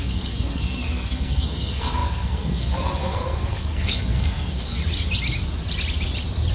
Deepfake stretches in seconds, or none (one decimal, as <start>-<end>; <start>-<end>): 0.0-4.8